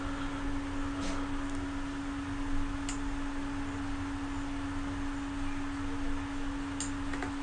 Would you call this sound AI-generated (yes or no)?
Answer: no